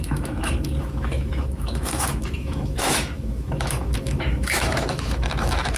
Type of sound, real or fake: fake